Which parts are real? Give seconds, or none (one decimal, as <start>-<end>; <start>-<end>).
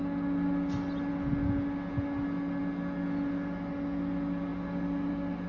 0.0-5.5